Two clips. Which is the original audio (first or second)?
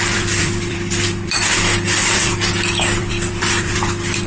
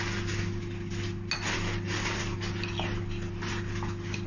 second